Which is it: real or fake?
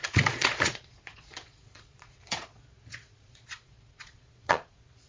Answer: fake